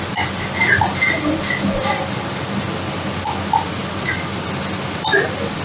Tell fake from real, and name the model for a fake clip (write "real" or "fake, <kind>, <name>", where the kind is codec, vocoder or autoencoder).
real